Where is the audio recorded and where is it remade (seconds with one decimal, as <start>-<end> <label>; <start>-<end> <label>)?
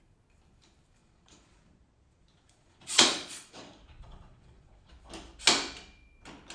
0.0-1.0 recorded; 1.0-4.9 remade; 4.9-6.5 recorded